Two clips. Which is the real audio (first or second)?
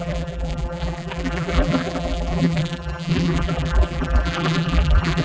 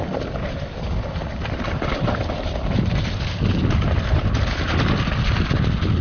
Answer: second